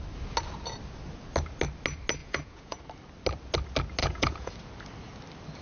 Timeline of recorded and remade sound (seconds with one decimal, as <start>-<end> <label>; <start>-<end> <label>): 0.0-2.2 recorded; 2.2-2.8 remade; 2.8-4.0 recorded; 4.0-4.5 remade; 4.5-5.6 recorded